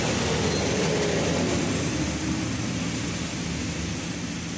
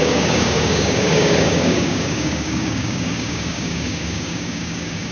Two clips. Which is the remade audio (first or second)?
second